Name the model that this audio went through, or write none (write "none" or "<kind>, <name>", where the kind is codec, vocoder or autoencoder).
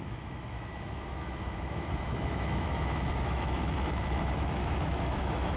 autoencoder, DAC-VAE